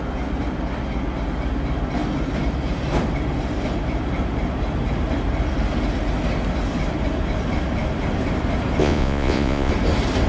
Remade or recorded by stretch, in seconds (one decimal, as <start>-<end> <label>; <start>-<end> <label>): 0.0-8.8 recorded; 8.8-9.7 remade; 9.7-10.3 recorded